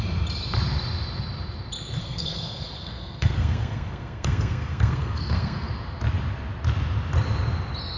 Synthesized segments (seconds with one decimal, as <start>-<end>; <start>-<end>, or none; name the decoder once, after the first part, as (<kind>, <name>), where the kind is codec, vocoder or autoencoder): 2.0-5.7 (codec, SNAC)